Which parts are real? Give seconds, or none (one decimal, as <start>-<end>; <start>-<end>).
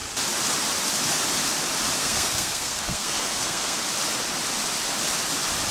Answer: 0.0-2.0; 3.8-5.7